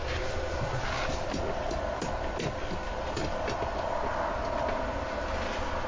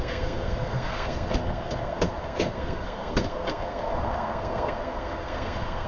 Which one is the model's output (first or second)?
second